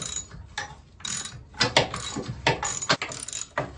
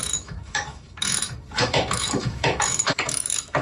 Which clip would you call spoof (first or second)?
second